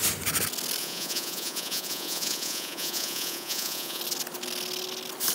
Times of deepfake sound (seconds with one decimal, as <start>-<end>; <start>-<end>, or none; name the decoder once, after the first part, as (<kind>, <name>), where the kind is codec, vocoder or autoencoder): 0.8-4.0 (vocoder, Vocos)